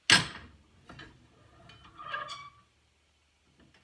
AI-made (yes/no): no